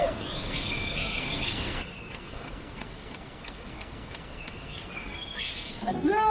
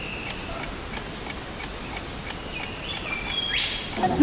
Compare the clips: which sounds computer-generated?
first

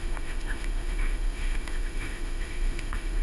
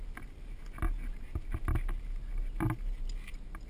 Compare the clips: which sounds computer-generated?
first